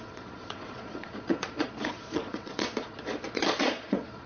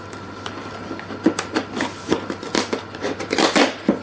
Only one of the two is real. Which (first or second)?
second